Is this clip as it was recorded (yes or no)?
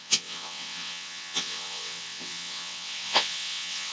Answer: no